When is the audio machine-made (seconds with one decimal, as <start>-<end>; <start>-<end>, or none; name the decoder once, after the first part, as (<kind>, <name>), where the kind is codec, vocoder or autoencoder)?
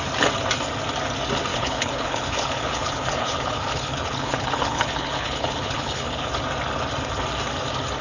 1.5-6.3 (codec, HILCodec)